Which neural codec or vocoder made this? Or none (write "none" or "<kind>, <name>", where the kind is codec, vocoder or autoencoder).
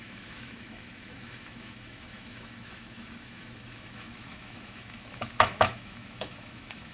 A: autoencoder, DAC-VAE